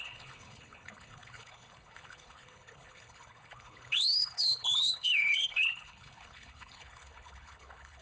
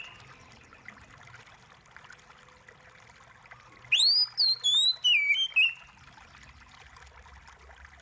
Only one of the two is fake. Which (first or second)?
first